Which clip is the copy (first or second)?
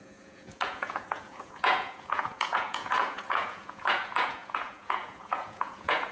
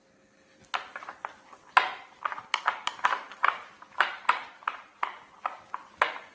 first